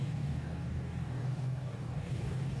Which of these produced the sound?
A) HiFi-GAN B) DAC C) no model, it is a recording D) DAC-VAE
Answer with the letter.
B